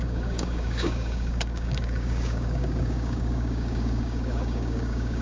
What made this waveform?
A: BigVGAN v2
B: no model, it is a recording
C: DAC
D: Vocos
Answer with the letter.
C